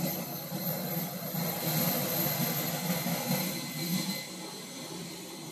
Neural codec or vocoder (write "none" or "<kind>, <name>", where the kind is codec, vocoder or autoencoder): none